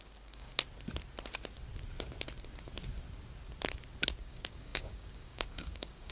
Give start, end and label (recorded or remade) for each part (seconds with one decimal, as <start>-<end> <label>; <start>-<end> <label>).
0.0-0.5 remade; 0.5-4.2 recorded; 4.2-6.1 remade